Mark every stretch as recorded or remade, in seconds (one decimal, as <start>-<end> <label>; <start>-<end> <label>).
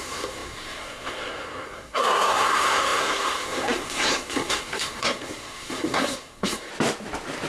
0.0-6.7 remade; 6.7-7.5 recorded